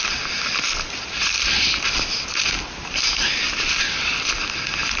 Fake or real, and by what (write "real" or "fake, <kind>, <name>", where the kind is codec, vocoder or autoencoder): real